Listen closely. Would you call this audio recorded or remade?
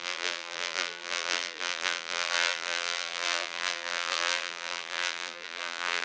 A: remade